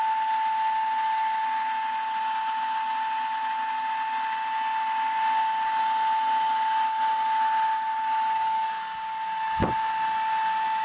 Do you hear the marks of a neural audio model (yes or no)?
no